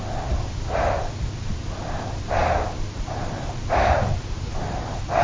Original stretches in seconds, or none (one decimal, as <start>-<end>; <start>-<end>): 0.0-5.2